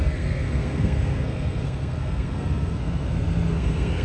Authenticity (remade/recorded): remade